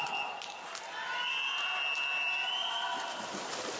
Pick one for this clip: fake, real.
real